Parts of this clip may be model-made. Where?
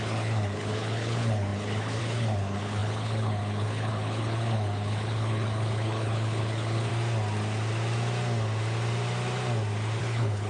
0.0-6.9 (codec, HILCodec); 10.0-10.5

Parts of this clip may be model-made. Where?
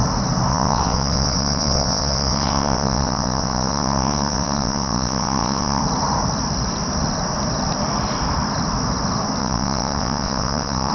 0.5-5.8 (vocoder, WaveNeXt); 9.4-10.9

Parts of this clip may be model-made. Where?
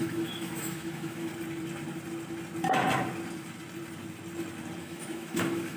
0.0-1.3 (autoencoder, DAC-VAE); 4.8-5.8